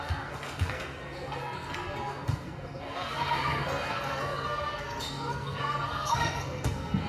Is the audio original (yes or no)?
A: no